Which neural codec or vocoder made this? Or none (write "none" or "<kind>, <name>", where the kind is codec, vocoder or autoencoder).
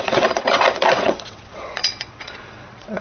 vocoder, WaveNeXt